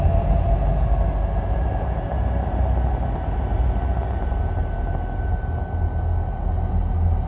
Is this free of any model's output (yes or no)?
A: yes